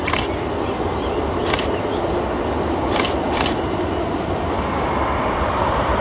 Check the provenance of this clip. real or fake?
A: fake